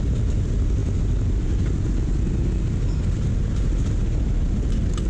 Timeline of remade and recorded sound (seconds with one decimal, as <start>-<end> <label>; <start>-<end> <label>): 0.0-5.1 recorded